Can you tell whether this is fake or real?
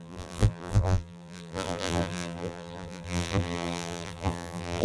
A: fake